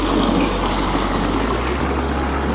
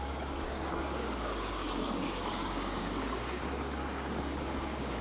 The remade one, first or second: second